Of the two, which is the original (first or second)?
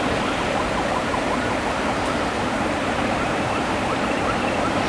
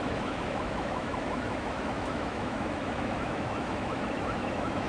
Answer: first